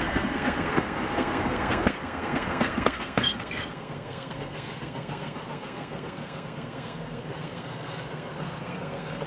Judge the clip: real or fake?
fake